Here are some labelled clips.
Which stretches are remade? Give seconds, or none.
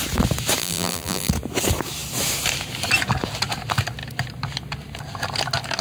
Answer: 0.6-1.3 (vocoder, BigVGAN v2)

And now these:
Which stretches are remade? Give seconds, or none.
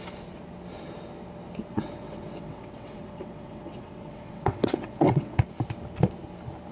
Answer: 1.7-5.4 (vocoder, WaveNeXt)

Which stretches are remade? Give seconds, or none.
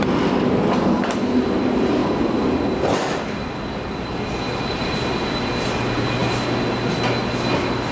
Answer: none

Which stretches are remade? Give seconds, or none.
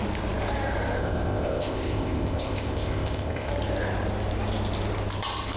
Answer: 1.0-3.5 (codec, ZipCodec)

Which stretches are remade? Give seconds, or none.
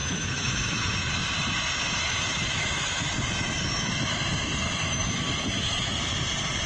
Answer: 0.0-1.1 (autoencoder, DAC-VAE); 2.0-6.0